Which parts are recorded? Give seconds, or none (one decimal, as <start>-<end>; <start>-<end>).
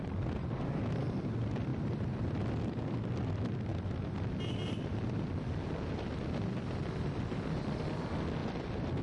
0.0-1.7; 2.8-8.4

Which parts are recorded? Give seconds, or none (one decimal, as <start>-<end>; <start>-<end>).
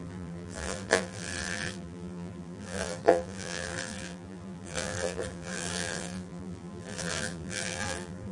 none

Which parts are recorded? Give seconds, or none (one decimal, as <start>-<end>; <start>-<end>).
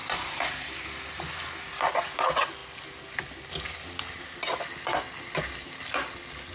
1.7-6.5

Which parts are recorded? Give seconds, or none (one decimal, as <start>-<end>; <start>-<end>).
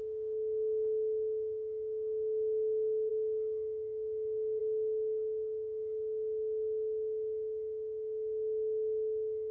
0.0-9.5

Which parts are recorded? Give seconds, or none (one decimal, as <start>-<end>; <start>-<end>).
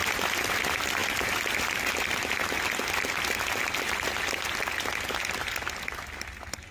0.0-6.7